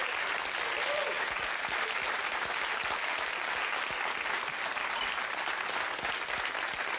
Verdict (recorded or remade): recorded